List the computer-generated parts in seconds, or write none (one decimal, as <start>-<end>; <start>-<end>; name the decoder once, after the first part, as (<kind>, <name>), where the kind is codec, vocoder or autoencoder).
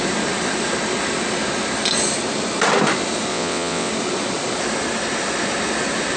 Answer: 3.3-3.9 (vocoder, WaveNeXt)